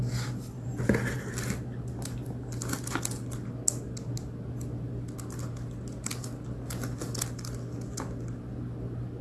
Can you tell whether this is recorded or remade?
recorded